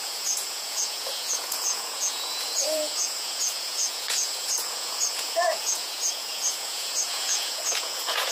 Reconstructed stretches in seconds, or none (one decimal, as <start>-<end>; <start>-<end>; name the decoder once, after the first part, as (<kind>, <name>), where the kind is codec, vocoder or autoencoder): 0.0-8.3 (vocoder, Vocos)